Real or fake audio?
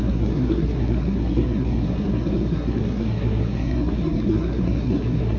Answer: fake